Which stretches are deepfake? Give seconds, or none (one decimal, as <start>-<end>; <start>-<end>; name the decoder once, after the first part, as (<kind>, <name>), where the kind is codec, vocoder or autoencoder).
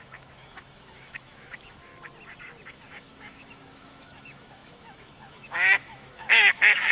0.0-1.9 (autoencoder, DAC-VAE); 2.7-6.9